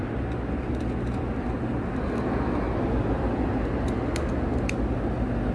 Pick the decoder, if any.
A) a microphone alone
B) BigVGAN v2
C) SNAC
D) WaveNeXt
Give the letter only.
A